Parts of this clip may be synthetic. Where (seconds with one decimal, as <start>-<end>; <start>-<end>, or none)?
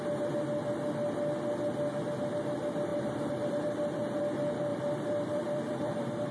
2.9-4.2; 4.7-6.3